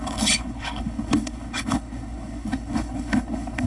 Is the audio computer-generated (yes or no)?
yes